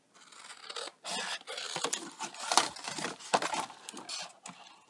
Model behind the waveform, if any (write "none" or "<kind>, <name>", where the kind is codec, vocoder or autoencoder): none